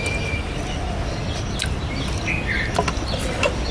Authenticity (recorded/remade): recorded